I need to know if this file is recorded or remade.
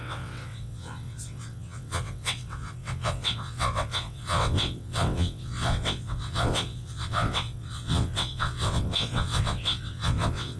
remade